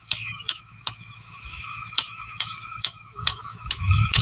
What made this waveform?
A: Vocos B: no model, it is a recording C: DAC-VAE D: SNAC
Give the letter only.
C